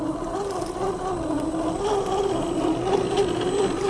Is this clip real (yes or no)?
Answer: yes